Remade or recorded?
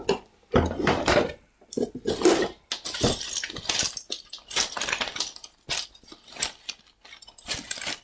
recorded